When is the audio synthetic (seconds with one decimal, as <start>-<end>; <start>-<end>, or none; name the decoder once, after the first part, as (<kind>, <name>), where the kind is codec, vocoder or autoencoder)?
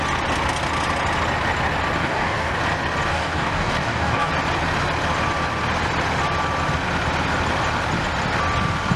2.0-2.6 (codec, DAC); 3.1-4.3